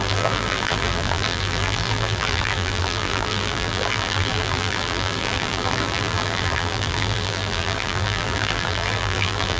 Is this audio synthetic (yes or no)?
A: yes